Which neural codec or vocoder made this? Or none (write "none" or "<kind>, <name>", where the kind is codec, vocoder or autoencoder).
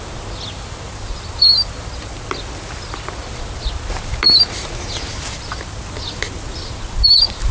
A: none